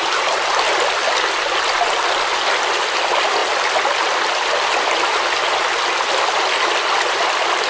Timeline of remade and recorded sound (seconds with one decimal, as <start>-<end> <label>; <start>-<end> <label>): 0.0-7.7 recorded